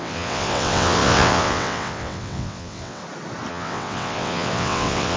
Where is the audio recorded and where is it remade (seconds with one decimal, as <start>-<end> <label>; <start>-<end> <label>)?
0.0-3.0 remade; 3.0-3.5 recorded; 3.5-5.2 remade